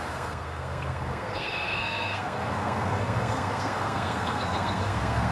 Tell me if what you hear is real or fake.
fake